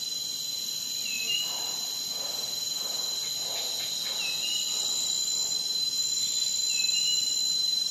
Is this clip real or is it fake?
real